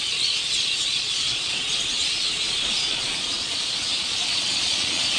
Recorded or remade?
remade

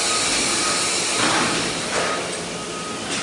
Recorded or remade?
recorded